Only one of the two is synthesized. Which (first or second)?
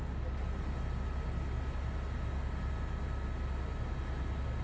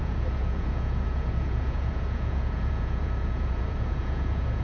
second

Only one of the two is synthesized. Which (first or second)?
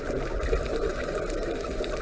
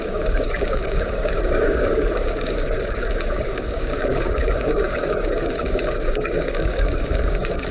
second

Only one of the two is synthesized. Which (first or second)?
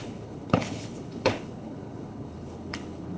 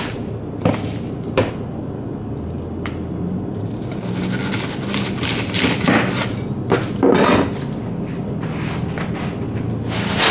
first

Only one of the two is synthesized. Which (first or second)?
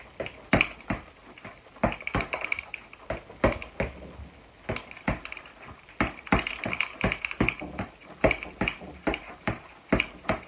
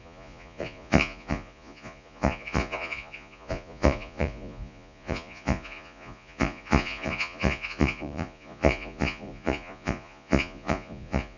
second